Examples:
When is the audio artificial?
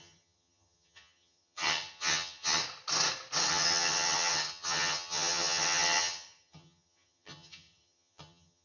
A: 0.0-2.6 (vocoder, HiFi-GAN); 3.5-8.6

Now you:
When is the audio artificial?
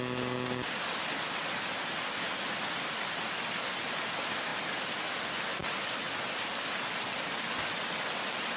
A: none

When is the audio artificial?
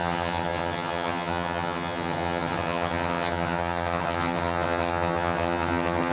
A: 0.0-6.1 (vocoder, HiFi-GAN)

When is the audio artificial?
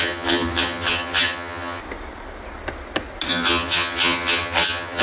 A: 0.0-1.8 (vocoder, HiFi-GAN); 3.3-5.0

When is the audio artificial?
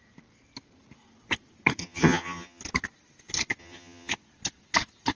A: 1.8-2.6 (vocoder, HiFi-GAN); 3.6-4.1